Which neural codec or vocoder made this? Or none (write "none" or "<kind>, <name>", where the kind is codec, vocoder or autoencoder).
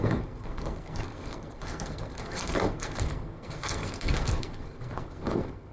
codec, SNAC